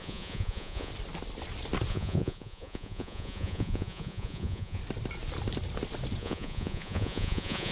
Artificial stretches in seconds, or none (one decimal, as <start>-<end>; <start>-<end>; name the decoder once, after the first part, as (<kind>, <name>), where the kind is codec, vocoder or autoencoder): 0.0-0.9 (vocoder, Vocos); 1.9-4.8; 6.2-7.7